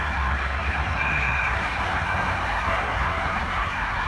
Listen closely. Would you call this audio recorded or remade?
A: remade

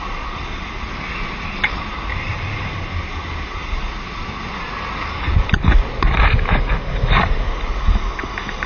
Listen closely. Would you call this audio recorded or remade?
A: recorded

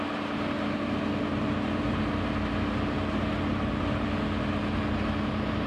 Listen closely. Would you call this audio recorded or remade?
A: recorded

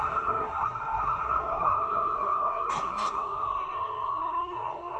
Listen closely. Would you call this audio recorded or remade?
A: remade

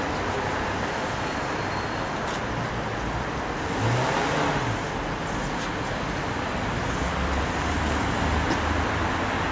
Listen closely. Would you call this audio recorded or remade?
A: recorded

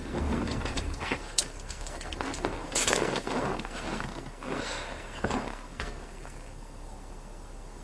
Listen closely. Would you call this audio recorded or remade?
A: remade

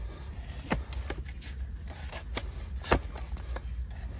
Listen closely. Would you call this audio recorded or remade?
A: recorded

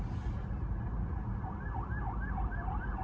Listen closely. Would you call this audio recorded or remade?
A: recorded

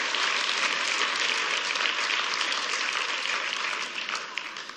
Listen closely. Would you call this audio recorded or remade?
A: recorded